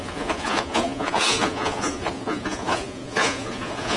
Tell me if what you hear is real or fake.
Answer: fake